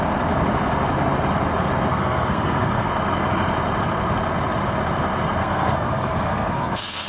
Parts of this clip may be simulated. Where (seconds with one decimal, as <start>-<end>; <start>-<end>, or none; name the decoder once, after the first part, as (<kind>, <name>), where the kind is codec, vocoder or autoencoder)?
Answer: 1.9-2.9 (codec, SNAC); 5.4-7.1